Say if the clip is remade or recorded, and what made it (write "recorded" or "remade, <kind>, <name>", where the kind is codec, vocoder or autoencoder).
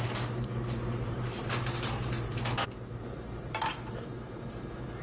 remade, vocoder, BigVGAN v2